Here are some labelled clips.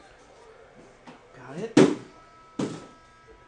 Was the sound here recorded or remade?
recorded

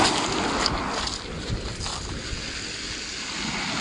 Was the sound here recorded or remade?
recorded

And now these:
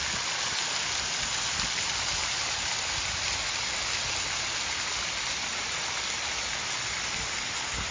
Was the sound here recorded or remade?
recorded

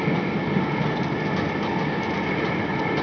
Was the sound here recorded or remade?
recorded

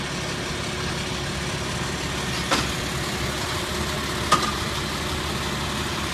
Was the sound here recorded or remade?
recorded